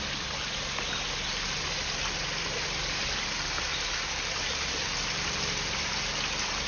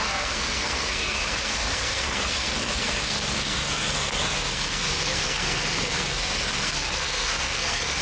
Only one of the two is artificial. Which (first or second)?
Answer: second